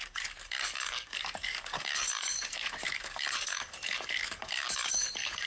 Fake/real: fake